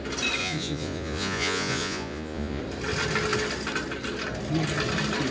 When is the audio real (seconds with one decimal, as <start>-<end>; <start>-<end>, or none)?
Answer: 0.0-0.4; 2.6-5.3

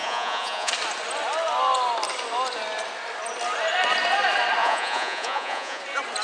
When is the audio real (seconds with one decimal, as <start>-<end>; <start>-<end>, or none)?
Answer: 0.7-4.6; 5.8-6.2

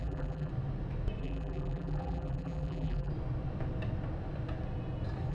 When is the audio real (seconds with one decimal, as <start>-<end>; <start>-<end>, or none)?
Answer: 0.5-1.2; 3.1-5.3

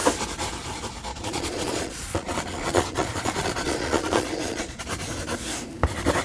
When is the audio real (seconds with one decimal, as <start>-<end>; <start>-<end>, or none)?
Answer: 0.0-1.1; 4.8-6.2

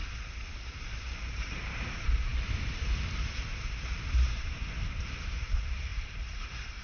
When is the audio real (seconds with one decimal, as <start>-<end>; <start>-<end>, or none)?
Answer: 0.0-0.7

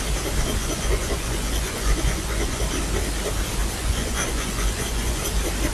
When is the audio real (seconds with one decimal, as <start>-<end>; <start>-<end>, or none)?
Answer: 0.0-0.6; 2.6-3.8; 5.2-5.7

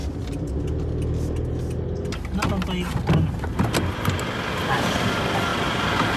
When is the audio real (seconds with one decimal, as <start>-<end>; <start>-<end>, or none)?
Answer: 0.0-6.2

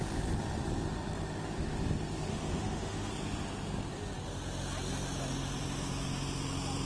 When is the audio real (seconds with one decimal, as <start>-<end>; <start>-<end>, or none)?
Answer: 0.0-2.3; 3.1-6.9